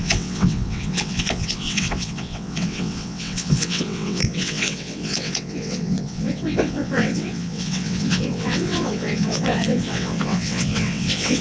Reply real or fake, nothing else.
fake